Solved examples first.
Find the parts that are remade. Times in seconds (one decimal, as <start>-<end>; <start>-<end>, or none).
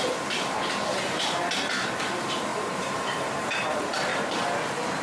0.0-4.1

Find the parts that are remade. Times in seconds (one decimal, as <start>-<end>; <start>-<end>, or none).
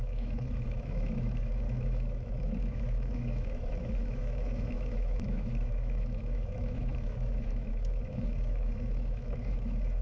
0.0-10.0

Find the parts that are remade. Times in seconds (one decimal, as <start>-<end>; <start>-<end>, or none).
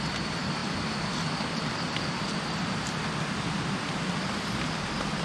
none